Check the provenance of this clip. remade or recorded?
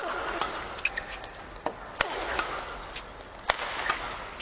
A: recorded